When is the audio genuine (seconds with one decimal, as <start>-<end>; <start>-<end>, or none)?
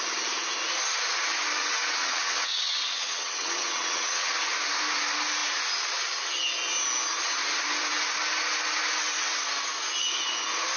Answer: 0.0-1.6; 4.3-10.8